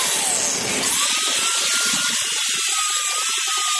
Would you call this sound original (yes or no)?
yes